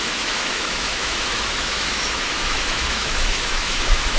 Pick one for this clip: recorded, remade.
remade